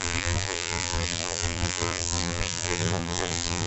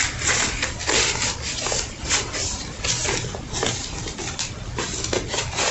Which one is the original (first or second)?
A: second